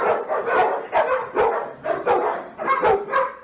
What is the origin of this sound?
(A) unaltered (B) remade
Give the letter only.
A